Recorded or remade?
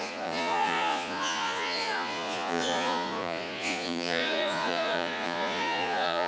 remade